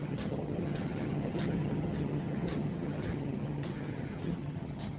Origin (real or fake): fake